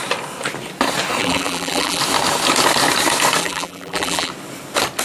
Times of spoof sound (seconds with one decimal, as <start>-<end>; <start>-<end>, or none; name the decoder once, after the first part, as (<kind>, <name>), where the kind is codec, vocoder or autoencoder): 1.2-2.0 (vocoder, BigVGAN v2); 3.4-4.3